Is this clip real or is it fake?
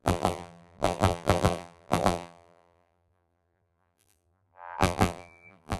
fake